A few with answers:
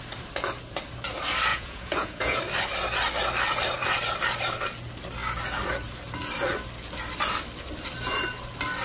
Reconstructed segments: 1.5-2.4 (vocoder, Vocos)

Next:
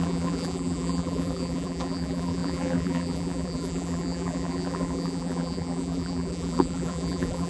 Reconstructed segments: 0.0-7.5 (vocoder, BigVGAN v2)

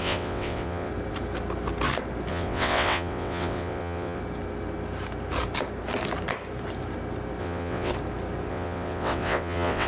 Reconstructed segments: 0.0-0.9 (vocoder, WaveNeXt); 2.3-4.2; 7.4-7.9; 8.5-9.9

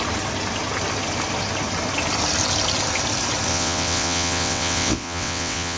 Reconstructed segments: 3.5-5.8 (vocoder, WaveNeXt)

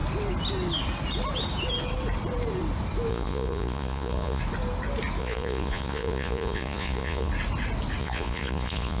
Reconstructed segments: 3.1-4.4 (vocoder, Vocos); 5.2-7.3; 8.0-9.0

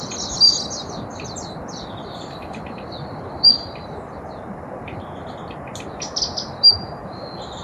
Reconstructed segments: 1.1-5.7 (vocoder, BigVGAN v2)